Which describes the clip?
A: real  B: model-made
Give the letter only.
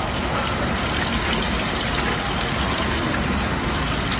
A